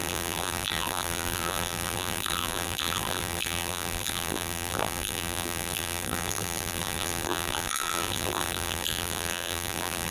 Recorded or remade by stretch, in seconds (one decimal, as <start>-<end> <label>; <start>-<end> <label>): 0.0-10.1 remade